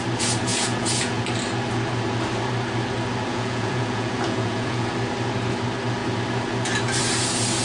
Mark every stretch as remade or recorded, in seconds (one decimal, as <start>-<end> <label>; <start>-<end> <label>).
0.0-0.5 recorded; 0.5-1.2 remade; 1.2-3.3 recorded; 3.3-4.9 remade; 4.9-7.6 recorded